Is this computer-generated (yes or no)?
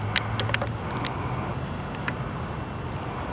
no